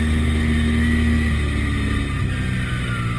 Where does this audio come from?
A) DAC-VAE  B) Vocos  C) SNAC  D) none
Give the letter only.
D